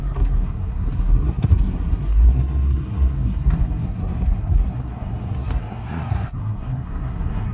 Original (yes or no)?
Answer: no